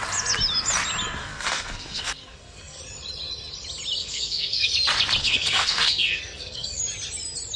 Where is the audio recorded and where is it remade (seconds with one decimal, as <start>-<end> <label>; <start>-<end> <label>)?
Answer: 0.0-1.2 recorded; 1.2-2.8 remade; 2.8-4.0 recorded; 4.0-4.7 remade; 4.7-5.2 recorded; 5.2-6.8 remade; 6.8-7.6 recorded